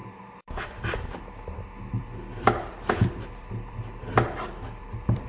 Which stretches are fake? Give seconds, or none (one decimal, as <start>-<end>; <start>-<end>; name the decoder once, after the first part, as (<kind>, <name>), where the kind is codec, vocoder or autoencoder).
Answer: 0.0-1.2 (vocoder, BigVGAN v2); 1.9-5.3